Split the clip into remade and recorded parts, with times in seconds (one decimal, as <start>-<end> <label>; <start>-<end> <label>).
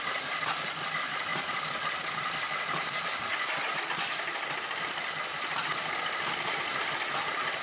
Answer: 0.0-3.3 remade; 3.3-6.7 recorded; 6.7-7.6 remade